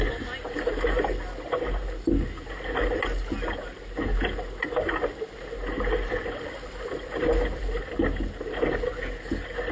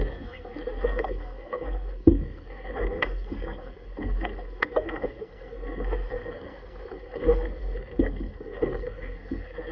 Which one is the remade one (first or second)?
second